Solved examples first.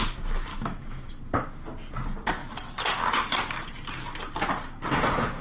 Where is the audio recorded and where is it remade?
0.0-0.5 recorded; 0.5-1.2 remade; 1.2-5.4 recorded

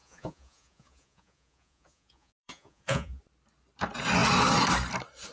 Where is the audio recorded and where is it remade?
0.0-3.2 remade; 3.2-5.3 recorded

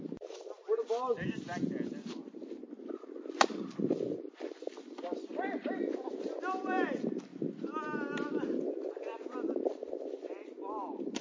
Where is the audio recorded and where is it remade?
0.0-2.2 remade; 2.2-3.5 recorded; 3.5-7.3 remade; 7.3-8.6 recorded; 8.6-11.2 remade

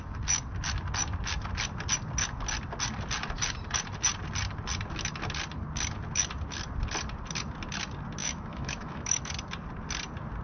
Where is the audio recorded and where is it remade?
0.0-8.2 recorded; 8.2-9.3 remade; 9.3-10.4 recorded

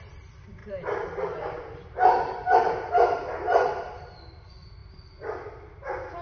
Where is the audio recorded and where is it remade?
0.0-0.6 recorded; 0.6-2.9 remade; 2.9-6.2 recorded

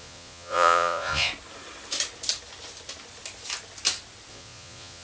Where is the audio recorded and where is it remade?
0.0-1.3 remade; 1.3-4.3 recorded; 4.3-5.0 remade

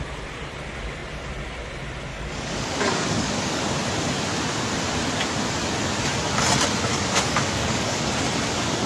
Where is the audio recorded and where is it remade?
0.0-2.1 recorded; 2.1-3.6 remade; 3.6-6.9 recorded; 6.9-8.1 remade; 8.1-8.9 recorded